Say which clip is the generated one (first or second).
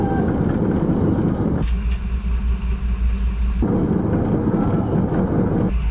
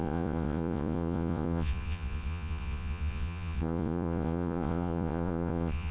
second